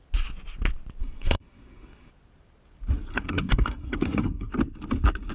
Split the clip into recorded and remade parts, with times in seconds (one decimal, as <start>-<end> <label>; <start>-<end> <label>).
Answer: 0.0-1.0 recorded; 1.0-2.1 remade; 2.1-3.1 recorded; 3.1-4.5 remade; 4.5-5.3 recorded